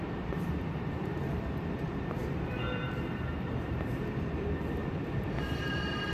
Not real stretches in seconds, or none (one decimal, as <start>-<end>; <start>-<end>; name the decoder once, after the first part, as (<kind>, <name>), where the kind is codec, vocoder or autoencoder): 0.0-6.1 (vocoder, BigVGAN v2)